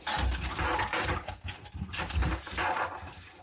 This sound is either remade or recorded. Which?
recorded